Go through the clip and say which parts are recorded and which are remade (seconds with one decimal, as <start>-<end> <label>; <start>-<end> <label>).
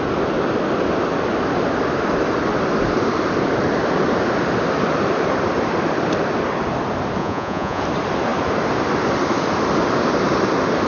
0.0-7.2 recorded; 7.2-7.8 remade; 7.8-10.9 recorded